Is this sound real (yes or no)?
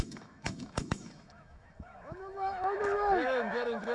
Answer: no